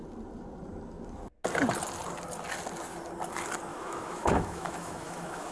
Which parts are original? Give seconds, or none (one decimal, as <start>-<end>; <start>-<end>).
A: 0.0-3.7